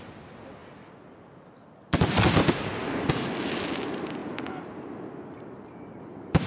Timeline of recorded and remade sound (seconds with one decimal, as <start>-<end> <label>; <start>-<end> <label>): 0.0-4.2 recorded; 4.2-4.8 remade; 4.8-6.5 recorded